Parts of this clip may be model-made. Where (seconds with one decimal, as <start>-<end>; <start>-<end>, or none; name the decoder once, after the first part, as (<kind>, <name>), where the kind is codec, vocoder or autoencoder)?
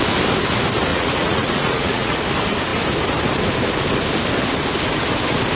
0.9-2.2 (vocoder, Vocos)